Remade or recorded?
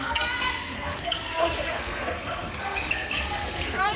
remade